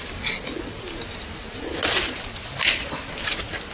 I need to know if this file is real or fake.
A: real